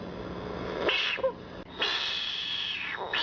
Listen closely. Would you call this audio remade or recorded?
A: recorded